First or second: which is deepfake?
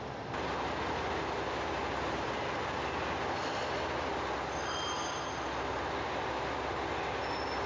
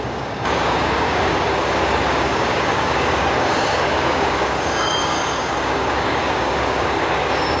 second